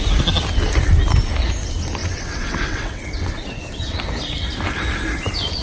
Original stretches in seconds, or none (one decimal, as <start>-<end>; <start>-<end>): 0.0-2.0; 3.6-5.6